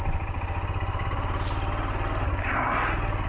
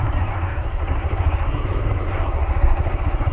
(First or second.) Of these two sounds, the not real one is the second